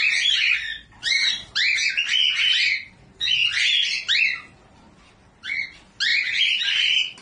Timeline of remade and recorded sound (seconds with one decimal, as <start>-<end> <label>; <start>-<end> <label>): 0.0-0.7 recorded; 0.7-1.9 remade; 1.9-6.1 recorded; 6.1-7.2 remade